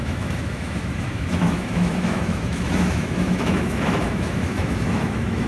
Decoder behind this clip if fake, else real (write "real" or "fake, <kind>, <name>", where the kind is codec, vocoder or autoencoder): fake, autoencoder, DAC-VAE